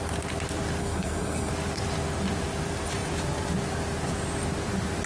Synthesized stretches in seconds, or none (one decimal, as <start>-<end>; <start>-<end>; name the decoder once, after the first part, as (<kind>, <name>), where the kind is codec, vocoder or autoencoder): 0.8-1.5 (codec, SNAC)

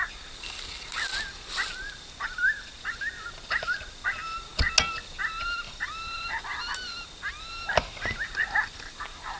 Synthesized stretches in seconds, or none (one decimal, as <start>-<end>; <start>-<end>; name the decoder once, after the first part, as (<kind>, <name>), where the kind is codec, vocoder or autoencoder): none

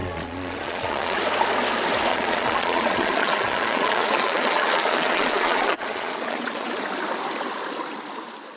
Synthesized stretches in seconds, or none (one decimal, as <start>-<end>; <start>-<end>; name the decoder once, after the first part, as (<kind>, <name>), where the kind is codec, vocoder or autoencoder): 0.0-1.2 (vocoder, Vocos); 2.1-6.8

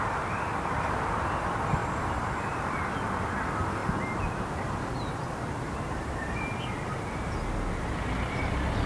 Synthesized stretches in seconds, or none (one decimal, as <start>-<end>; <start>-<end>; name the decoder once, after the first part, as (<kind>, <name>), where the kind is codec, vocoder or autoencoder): 1.8-2.7 (vocoder, BigVGAN v2); 5.2-6.4

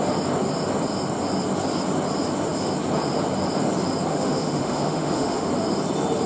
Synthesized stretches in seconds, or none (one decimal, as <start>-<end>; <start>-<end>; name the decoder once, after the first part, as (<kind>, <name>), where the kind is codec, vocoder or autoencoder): 4.1-5.5 (autoencoder, DAC-VAE)

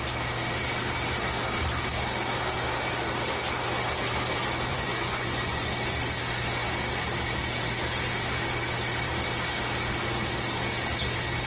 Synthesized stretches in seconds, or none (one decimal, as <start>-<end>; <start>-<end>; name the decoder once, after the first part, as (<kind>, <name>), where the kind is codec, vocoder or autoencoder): 4.7-5.6 (vocoder, Vocos)

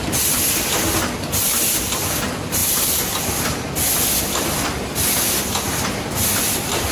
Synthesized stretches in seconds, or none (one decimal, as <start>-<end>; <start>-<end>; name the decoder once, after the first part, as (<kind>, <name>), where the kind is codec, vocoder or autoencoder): none

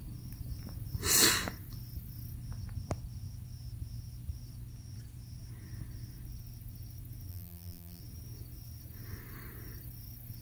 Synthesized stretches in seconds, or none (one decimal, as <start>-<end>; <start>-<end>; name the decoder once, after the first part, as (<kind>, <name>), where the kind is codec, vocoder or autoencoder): 7.3-8.0 (vocoder, BigVGAN v2)